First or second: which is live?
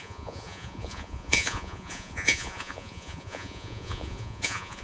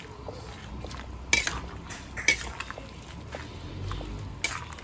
second